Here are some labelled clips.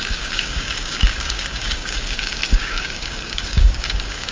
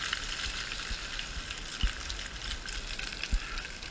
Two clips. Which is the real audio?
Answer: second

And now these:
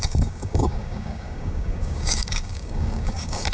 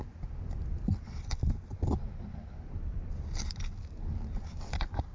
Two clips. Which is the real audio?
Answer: second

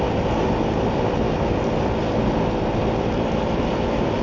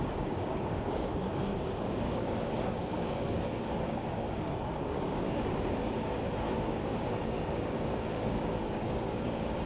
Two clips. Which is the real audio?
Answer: first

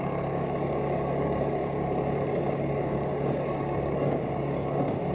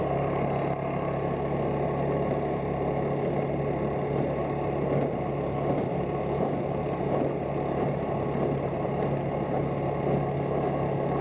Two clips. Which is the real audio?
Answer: second